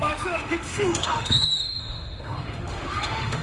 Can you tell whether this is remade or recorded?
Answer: remade